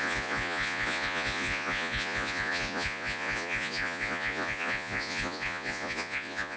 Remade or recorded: remade